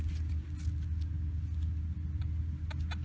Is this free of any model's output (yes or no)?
yes